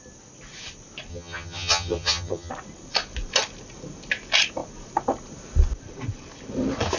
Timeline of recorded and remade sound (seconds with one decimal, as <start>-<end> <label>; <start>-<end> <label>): 0.0-1.1 recorded; 1.1-2.5 remade; 2.5-7.0 recorded